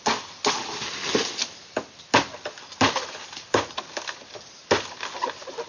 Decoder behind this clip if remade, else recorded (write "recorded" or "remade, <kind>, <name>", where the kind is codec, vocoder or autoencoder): recorded